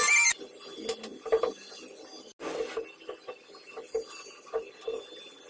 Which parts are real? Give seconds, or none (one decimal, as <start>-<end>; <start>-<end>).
0.0-5.5